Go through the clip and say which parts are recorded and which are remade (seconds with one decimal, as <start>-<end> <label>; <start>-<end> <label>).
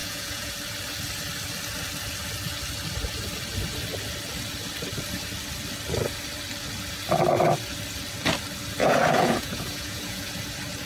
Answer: 0.0-0.5 remade; 0.5-8.8 recorded; 8.8-10.3 remade; 10.3-10.9 recorded